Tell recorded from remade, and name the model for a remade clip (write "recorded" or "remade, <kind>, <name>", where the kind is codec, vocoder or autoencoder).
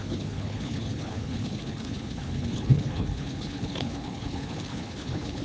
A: remade, codec, HILCodec